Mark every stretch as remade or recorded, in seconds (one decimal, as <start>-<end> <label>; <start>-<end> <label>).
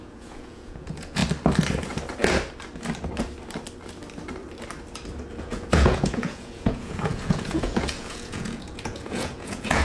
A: 0.0-1.2 remade; 1.2-5.4 recorded; 5.4-9.8 remade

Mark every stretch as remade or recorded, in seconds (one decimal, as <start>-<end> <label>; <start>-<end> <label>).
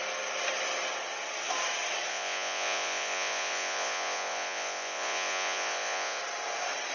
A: 0.0-2.1 recorded; 2.1-6.2 remade; 6.2-6.9 recorded